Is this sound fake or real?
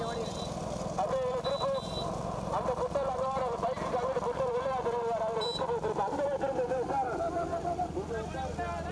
real